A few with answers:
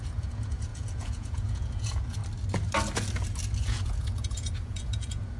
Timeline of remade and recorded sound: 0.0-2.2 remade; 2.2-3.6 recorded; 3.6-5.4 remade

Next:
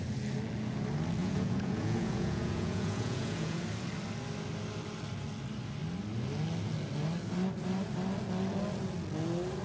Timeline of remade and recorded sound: 0.0-1.2 recorded; 1.2-3.6 remade; 3.6-9.6 recorded

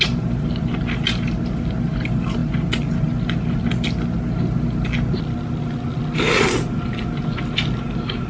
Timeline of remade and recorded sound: 0.0-8.3 recorded

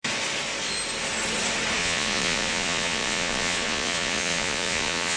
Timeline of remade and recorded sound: 0.0-1.8 recorded; 1.8-5.2 remade

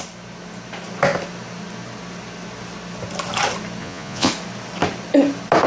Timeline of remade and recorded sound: 0.0-3.8 recorded; 3.8-4.3 remade; 4.3-5.7 recorded

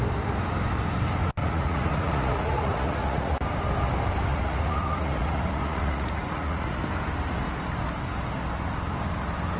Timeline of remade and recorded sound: 0.0-1.4 recorded; 1.4-3.4 remade; 3.4-4.3 recorded; 4.3-6.8 remade; 6.8-9.6 recorded

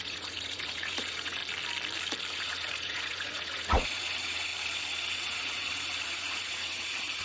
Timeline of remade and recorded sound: 0.0-1.4 remade; 1.4-2.3 recorded; 2.3-4.5 remade; 4.5-5.1 recorded; 5.1-7.2 remade